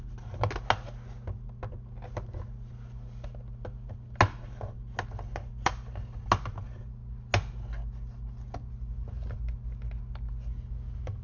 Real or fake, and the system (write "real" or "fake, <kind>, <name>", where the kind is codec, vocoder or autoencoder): real